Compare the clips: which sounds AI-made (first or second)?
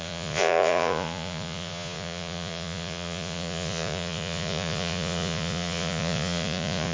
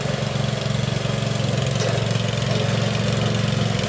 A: first